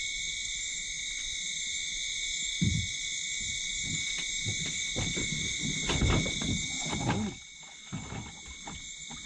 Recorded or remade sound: recorded